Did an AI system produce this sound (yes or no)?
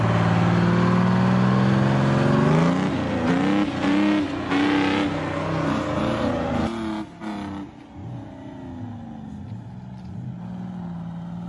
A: no